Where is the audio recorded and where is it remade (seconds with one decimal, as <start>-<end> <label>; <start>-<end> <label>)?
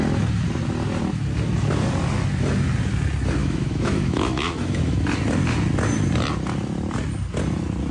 0.0-3.4 recorded; 3.4-5.0 remade; 5.0-7.9 recorded